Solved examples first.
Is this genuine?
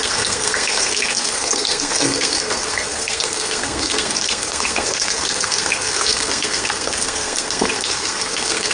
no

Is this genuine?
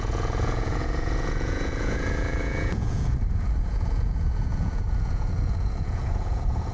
no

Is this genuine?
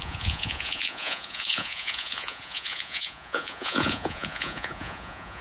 no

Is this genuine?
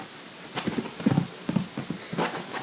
yes